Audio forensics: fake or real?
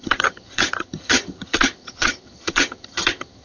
fake